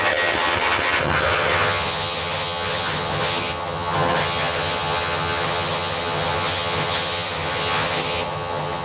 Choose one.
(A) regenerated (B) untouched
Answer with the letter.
A